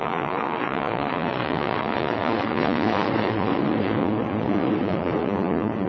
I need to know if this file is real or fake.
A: fake